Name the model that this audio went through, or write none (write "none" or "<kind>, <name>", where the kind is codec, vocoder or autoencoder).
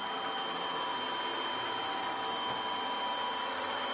none